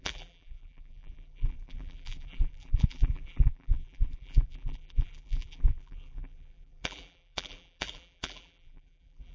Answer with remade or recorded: remade